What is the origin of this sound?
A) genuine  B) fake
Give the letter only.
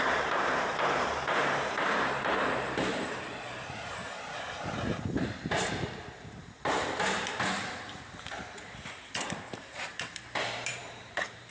B